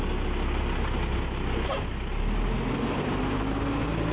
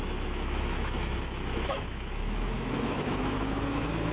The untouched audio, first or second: first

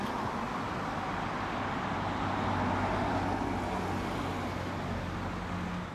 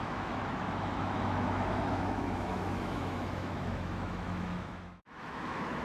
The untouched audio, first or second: first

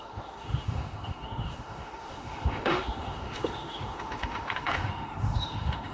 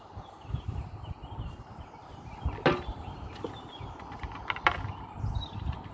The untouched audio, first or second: second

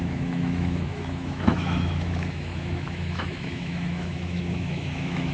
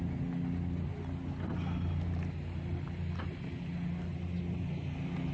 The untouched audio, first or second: second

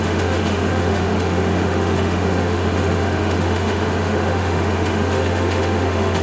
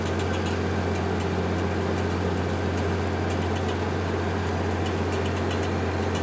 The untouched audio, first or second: second